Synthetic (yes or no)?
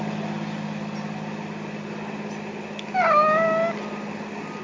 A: no